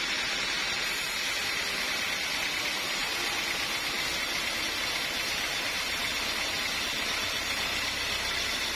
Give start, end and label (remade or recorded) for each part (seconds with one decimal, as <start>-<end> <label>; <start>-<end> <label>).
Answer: 0.0-8.8 recorded

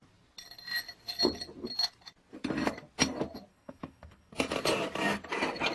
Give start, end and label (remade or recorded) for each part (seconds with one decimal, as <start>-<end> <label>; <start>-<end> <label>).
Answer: 0.0-3.5 recorded; 3.5-4.3 remade; 4.3-5.7 recorded

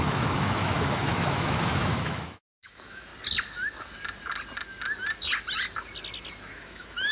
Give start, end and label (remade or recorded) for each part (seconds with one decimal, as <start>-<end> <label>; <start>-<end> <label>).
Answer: 0.0-3.1 remade; 3.1-6.5 recorded; 6.5-7.1 remade

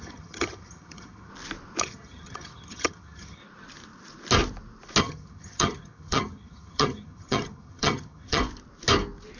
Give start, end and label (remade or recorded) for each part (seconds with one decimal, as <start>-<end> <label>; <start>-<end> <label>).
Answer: 0.0-1.3 remade; 1.3-1.8 recorded; 1.8-3.4 remade; 3.4-5.0 recorded; 5.0-8.4 remade; 8.4-9.4 recorded

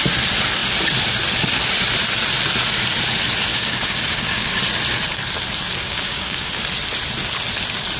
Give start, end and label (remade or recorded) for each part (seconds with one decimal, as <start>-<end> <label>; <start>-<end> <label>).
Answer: 0.0-3.5 recorded; 3.5-4.6 remade; 4.6-5.8 recorded; 5.8-6.5 remade; 6.5-8.0 recorded

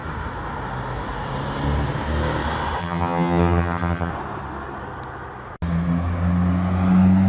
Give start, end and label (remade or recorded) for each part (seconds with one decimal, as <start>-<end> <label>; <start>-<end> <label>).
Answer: 0.0-2.8 recorded; 2.8-4.1 remade; 4.1-7.3 recorded